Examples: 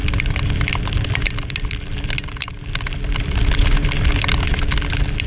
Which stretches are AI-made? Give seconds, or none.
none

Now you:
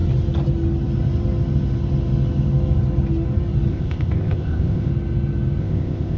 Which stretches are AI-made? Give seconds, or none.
3.7-4.9 (codec, ZipCodec); 5.6-6.2

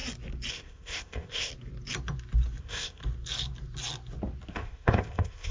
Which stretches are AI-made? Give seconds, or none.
0.5-1.5 (codec, ZipCodec); 2.6-3.0; 4.5-5.5

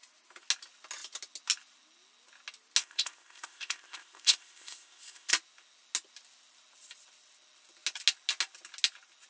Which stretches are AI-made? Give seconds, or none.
2.8-5.3 (codec, ZipCodec)